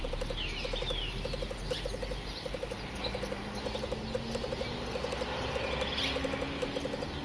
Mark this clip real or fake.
real